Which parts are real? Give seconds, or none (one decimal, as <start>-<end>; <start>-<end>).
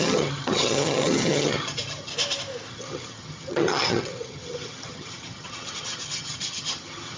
2.1-2.7